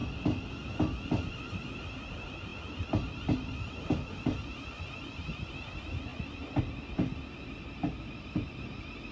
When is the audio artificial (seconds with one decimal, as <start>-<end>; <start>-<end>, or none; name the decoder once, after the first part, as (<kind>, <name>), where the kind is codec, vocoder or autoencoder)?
none